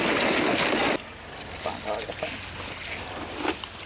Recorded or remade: recorded